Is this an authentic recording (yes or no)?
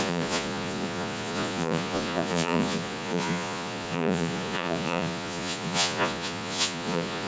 no